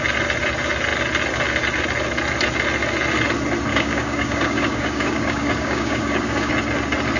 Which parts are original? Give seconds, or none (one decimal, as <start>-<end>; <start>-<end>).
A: 0.0-3.7; 6.5-7.2